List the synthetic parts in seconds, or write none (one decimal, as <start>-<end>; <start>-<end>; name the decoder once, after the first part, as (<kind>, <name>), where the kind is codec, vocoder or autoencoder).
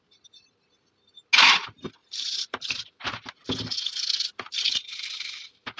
none